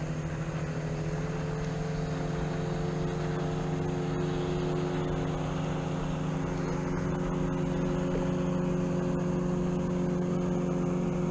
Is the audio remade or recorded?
recorded